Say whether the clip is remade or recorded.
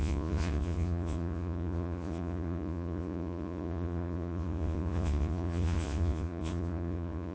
remade